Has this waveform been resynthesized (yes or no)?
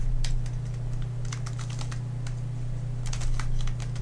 no